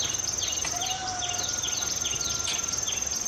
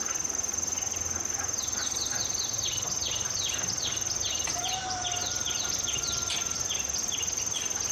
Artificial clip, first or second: first